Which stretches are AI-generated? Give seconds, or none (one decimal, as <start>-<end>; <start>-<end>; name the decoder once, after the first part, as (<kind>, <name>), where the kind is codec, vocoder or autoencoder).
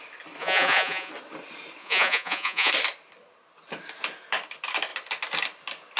0.4-1.1 (vocoder, Vocos); 1.8-2.7